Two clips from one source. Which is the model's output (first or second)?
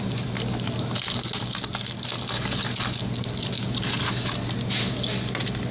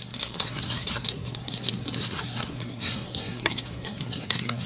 second